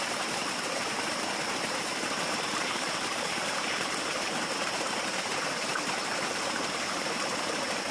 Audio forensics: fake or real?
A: fake